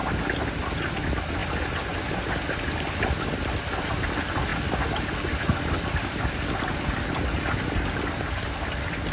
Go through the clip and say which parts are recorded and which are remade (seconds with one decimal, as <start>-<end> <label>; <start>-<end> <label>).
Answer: 0.0-9.1 recorded